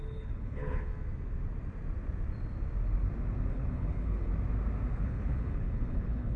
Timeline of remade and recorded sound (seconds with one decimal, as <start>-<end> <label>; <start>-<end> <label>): 0.0-0.9 remade; 0.9-3.5 recorded; 3.5-4.3 remade; 4.3-4.9 recorded; 4.9-6.4 remade